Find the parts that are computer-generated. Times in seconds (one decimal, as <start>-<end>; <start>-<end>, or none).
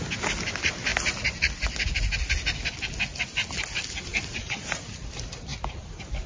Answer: 4.1-5.1; 5.5-6.3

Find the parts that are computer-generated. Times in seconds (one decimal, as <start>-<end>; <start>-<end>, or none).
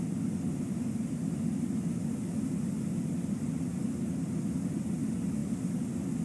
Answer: none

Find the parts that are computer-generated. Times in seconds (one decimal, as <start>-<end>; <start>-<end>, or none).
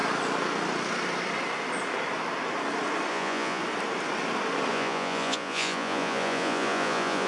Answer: 3.1-3.6; 4.7-7.3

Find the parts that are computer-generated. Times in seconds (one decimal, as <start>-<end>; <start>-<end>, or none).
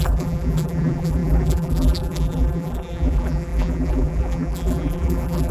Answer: 0.0-5.5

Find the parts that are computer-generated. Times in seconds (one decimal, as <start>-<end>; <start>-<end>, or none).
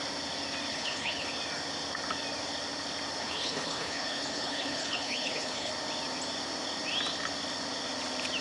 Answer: 0.7-1.3; 3.2-5.7